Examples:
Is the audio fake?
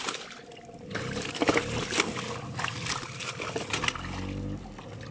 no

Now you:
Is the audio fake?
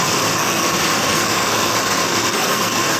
yes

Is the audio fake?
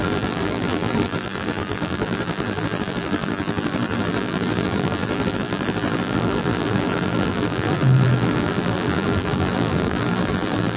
yes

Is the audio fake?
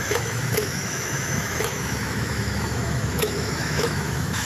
yes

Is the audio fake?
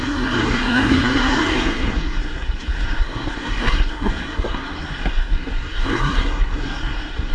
yes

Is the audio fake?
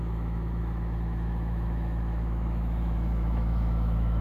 yes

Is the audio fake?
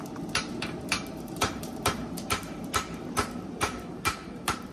yes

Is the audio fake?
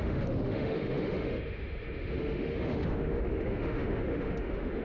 yes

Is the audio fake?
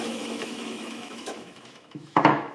yes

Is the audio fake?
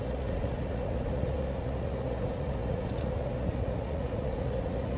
yes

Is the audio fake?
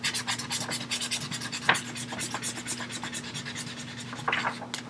no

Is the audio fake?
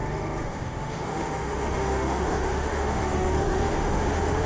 yes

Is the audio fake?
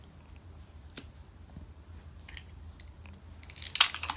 no